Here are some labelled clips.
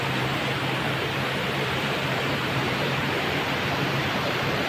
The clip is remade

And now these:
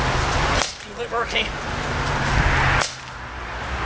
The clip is recorded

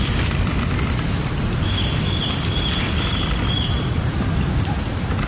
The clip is remade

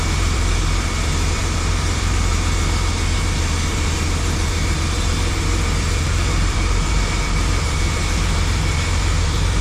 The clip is remade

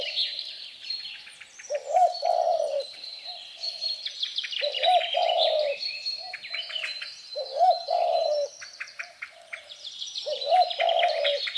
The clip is remade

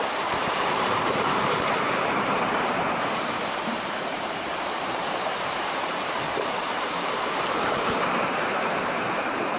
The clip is remade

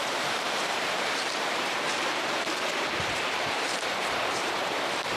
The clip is remade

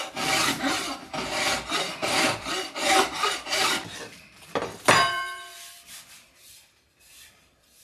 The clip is remade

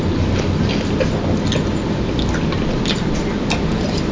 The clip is recorded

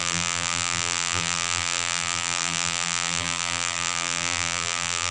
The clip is remade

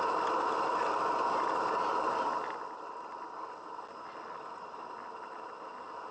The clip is recorded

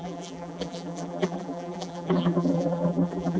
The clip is remade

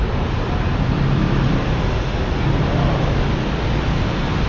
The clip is recorded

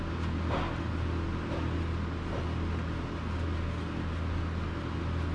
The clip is recorded